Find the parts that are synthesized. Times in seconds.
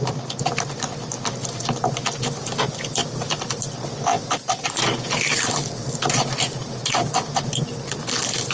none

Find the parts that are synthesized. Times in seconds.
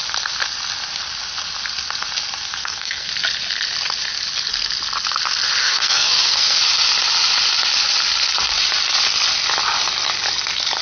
2.6-3.1 (codec, SNAC); 5.6-6.6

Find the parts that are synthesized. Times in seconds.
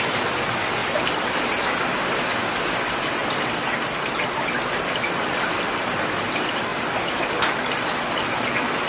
none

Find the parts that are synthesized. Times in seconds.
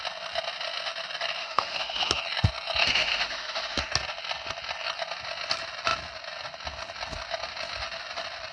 1.4-2.2 (autoencoder, DAC-VAE); 2.8-3.9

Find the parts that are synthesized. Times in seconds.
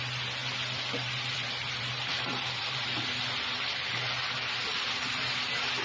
0.4-3.9 (vocoder, BigVGAN v2)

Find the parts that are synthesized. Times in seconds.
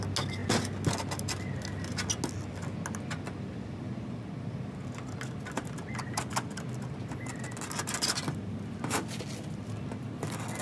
none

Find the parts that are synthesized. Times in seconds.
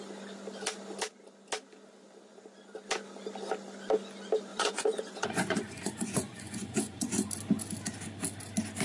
4.5-7.3 (vocoder, Vocos)